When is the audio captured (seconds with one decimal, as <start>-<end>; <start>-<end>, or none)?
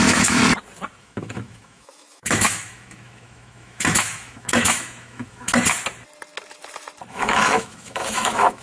0.4-1.0; 5.5-7.1